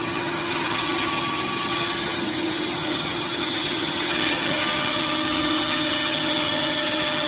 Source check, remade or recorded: remade